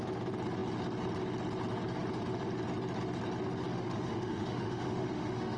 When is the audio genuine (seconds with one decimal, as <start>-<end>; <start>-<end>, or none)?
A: 0.0-3.7